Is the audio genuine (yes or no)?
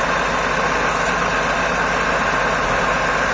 yes